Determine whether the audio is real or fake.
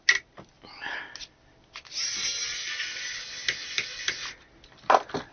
real